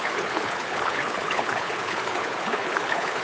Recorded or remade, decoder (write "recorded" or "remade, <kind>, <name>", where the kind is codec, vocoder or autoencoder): remade, codec, HILCodec